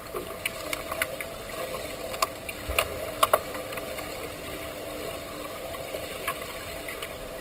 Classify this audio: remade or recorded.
recorded